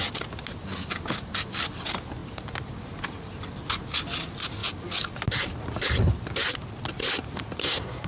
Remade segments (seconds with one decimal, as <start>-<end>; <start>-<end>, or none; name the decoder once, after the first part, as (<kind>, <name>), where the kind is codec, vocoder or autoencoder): 7.6-8.1 (codec, SNAC)